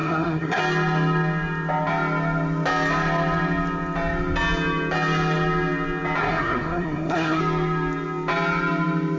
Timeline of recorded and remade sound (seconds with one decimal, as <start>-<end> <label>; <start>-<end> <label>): 0.0-0.6 remade; 0.6-6.2 recorded; 6.2-7.4 remade; 7.4-9.2 recorded